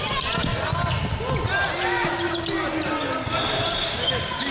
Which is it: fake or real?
real